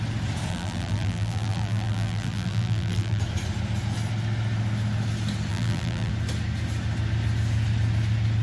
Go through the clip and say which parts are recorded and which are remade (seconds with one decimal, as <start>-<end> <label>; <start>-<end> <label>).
0.0-0.5 recorded; 0.5-3.2 remade; 3.2-5.5 recorded; 5.5-6.1 remade; 6.1-8.4 recorded

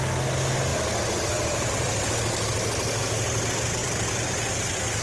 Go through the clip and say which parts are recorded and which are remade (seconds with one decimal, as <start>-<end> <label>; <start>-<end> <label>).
0.0-5.0 recorded

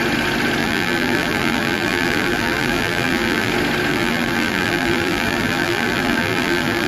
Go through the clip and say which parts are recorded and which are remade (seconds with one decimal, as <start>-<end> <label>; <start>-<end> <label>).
0.0-0.6 recorded; 0.6-3.5 remade; 3.5-3.9 recorded; 3.9-6.9 remade

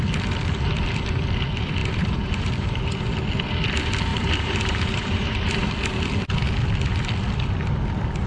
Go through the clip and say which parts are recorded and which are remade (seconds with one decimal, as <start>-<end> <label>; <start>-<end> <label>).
0.0-1.8 recorded; 1.8-3.0 remade; 3.0-4.1 recorded; 4.1-5.7 remade; 5.7-8.3 recorded

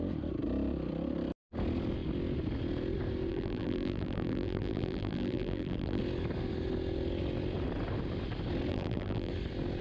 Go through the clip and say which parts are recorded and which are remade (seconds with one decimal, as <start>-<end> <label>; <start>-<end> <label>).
0.0-3.3 recorded; 3.3-6.0 remade; 6.0-8.7 recorded; 8.7-9.3 remade; 9.3-9.8 recorded

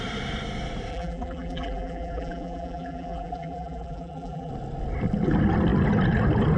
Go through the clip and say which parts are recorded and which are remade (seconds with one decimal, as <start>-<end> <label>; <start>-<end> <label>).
0.0-0.9 recorded; 0.9-4.5 remade; 4.5-6.6 recorded